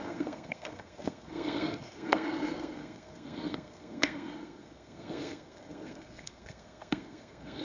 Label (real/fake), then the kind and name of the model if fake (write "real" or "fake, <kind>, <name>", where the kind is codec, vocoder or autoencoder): fake, codec, SNAC